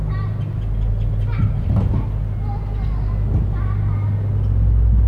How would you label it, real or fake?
real